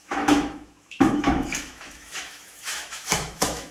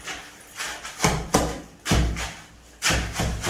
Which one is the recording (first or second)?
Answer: second